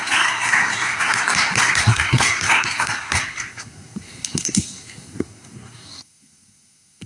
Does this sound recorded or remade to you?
remade